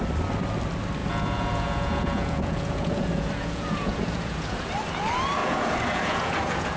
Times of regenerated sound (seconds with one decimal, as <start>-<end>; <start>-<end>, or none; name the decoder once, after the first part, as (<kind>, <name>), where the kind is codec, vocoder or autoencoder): 1.0-4.7 (vocoder, Vocos); 5.4-6.8